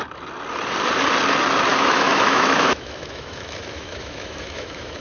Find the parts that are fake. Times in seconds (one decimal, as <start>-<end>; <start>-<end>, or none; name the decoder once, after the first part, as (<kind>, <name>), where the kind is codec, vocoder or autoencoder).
1.7-5.0 (autoencoder, DAC-VAE)